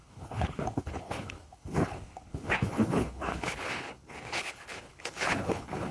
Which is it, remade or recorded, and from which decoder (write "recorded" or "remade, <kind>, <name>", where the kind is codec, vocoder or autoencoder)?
remade, codec, HILCodec